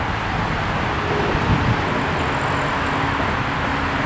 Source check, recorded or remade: recorded